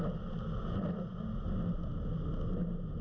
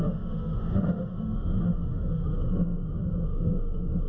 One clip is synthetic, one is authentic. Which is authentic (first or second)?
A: first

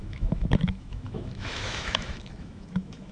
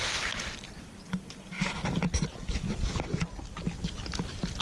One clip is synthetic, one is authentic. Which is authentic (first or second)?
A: second